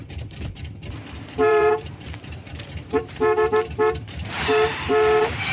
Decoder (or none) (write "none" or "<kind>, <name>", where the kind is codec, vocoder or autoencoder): vocoder, BigVGAN v2